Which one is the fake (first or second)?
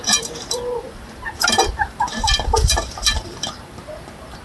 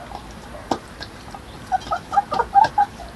first